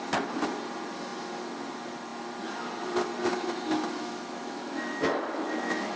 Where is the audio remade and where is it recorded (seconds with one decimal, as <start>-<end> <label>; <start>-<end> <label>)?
0.0-3.3 recorded; 3.3-6.0 remade

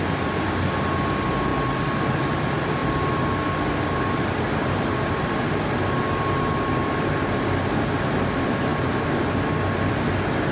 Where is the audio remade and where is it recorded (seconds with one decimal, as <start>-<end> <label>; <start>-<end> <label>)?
0.0-10.5 recorded

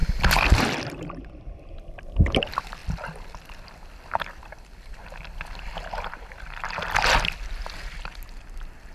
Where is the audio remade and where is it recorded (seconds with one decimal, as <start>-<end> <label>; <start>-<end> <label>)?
0.0-2.0 remade; 2.0-8.9 recorded

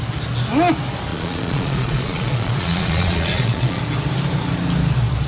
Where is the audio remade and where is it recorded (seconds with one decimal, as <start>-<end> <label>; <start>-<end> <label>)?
0.0-1.1 recorded; 1.1-3.8 remade; 3.8-5.3 recorded

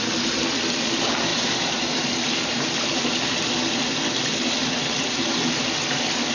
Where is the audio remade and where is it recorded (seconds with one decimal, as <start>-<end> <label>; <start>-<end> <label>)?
0.0-1.3 recorded; 1.3-3.1 remade; 3.1-6.3 recorded